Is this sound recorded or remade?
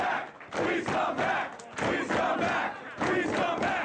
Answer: recorded